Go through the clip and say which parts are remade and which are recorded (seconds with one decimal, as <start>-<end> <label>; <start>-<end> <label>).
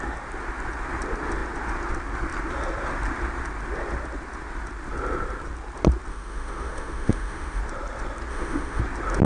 0.0-6.1 recorded; 6.1-7.6 remade; 7.6-8.3 recorded; 8.3-8.8 remade; 8.8-9.3 recorded